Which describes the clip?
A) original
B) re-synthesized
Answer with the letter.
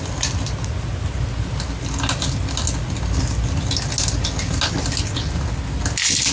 A